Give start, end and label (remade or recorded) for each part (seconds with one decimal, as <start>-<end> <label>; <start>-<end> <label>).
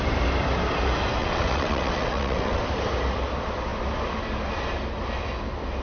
0.0-1.2 recorded; 1.2-2.6 remade; 2.6-5.8 recorded